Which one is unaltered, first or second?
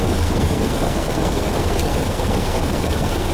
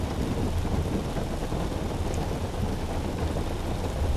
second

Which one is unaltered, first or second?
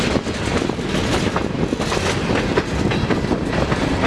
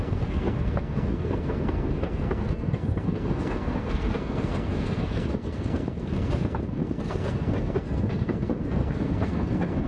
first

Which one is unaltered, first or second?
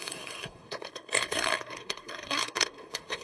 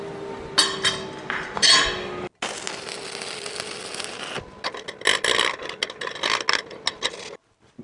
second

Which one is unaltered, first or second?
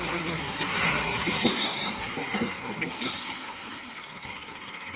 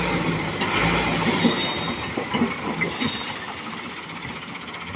second